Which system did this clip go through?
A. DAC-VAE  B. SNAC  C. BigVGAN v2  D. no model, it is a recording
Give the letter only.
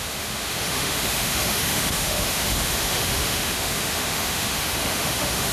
A